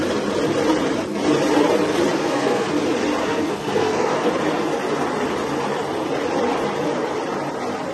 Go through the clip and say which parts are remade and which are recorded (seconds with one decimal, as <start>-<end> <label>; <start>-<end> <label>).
0.0-2.2 recorded; 2.2-2.7 remade; 2.7-3.2 recorded; 3.2-4.3 remade; 4.3-7.9 recorded

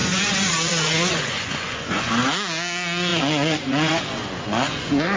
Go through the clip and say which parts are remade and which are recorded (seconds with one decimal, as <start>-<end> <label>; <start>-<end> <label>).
0.0-2.1 remade; 2.1-3.1 recorded; 3.1-5.2 remade

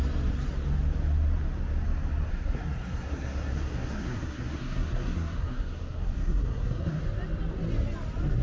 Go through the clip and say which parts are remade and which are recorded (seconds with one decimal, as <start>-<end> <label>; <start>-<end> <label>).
0.0-2.3 recorded; 2.3-7.0 remade; 7.0-8.4 recorded

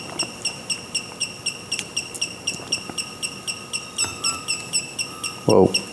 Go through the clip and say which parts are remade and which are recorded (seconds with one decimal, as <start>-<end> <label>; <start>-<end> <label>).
0.0-5.9 recorded

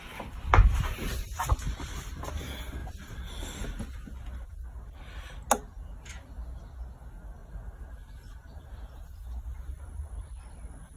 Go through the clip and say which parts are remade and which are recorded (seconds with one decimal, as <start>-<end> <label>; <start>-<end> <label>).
0.0-7.4 recorded; 7.4-10.2 remade; 10.2-11.0 recorded

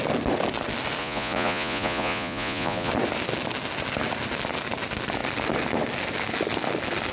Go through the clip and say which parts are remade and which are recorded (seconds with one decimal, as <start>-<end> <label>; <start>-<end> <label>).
0.0-1.0 recorded; 1.0-2.9 remade; 2.9-7.1 recorded

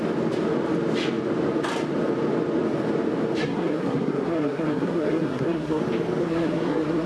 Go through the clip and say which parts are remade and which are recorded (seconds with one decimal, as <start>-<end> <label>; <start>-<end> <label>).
0.0-3.4 recorded; 3.4-5.8 remade; 5.8-6.2 recorded; 6.2-7.1 remade

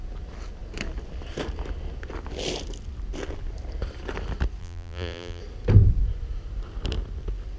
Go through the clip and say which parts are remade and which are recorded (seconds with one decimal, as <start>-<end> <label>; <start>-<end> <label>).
0.0-4.6 recorded; 4.6-5.4 remade; 5.4-7.6 recorded